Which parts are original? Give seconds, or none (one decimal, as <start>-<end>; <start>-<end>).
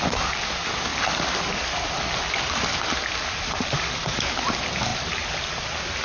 none